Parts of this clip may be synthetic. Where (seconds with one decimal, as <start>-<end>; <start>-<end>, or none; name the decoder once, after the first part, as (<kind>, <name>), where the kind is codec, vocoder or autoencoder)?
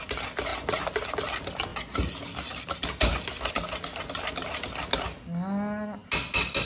none